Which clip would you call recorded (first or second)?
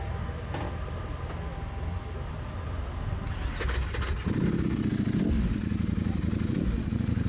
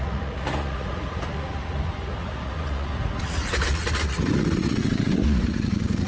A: first